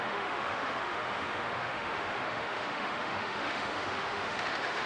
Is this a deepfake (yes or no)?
yes